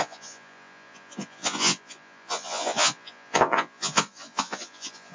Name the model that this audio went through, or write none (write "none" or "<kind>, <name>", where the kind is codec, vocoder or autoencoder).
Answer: vocoder, Vocos